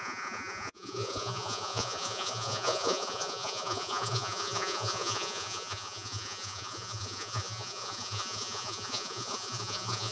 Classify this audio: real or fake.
fake